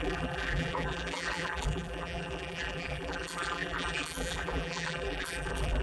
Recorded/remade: remade